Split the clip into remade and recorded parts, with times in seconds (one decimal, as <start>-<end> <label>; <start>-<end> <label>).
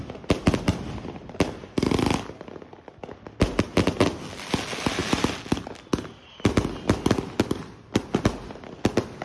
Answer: 0.0-9.2 recorded